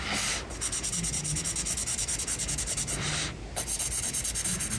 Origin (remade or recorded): recorded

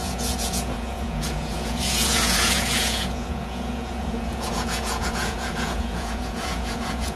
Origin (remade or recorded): remade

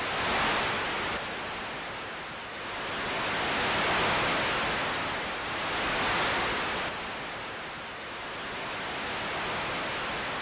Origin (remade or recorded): recorded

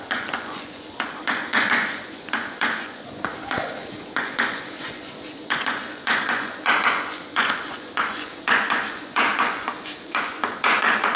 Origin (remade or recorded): remade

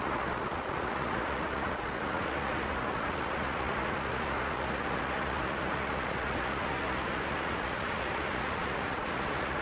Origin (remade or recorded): remade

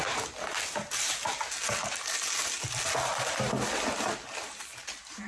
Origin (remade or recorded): recorded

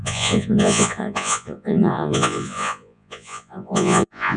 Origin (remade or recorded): remade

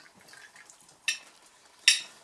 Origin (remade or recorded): recorded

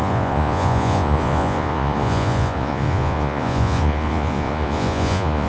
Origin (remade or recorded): remade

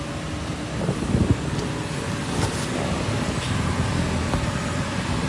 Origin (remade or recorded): recorded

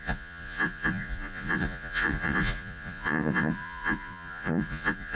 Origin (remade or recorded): remade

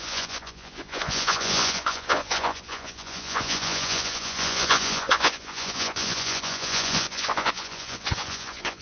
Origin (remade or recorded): remade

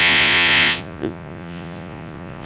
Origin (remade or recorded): remade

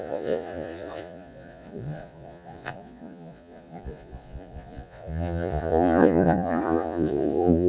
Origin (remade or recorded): remade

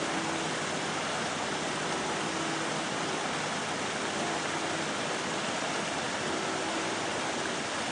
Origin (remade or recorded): recorded